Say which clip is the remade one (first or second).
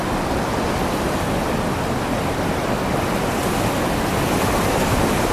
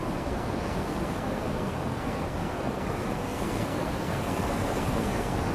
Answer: second